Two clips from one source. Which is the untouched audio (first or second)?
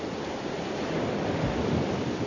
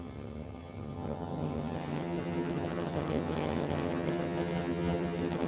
first